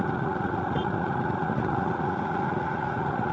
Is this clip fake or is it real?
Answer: fake